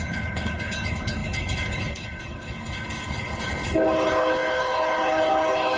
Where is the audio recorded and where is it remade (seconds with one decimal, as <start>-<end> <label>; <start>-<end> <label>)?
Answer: 0.0-5.8 remade